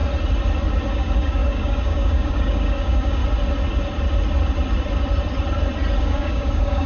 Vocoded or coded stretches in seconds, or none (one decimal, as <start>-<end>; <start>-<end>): 0.9-3.2; 6.0-6.9

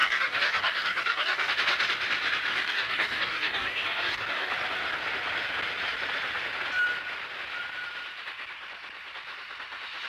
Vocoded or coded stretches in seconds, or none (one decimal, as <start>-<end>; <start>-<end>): 0.0-1.5; 2.5-4.5

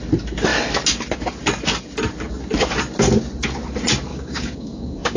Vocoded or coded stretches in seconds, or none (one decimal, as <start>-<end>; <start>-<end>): 4.1-5.2

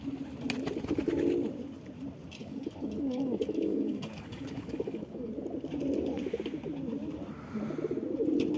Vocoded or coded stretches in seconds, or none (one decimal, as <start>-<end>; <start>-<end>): 2.4-5.3

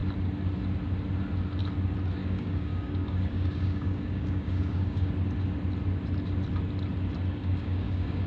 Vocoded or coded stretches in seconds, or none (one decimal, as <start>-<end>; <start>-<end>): 2.2-5.1; 7.4-8.3

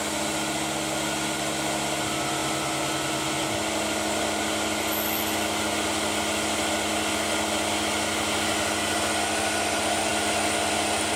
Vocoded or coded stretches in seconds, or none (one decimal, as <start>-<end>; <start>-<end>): none